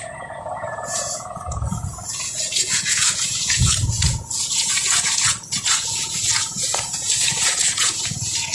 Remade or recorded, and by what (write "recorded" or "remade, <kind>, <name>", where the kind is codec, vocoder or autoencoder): remade, vocoder, Vocos